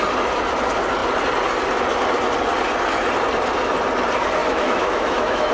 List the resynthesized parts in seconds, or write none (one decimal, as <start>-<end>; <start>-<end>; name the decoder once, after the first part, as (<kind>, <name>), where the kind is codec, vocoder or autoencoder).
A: 4.4-5.5 (autoencoder, DAC-VAE)